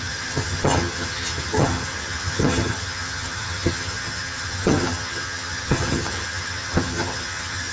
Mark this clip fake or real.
fake